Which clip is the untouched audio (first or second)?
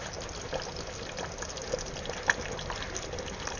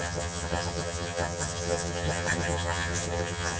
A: first